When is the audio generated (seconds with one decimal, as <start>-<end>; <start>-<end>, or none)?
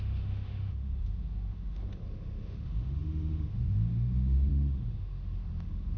0.0-6.0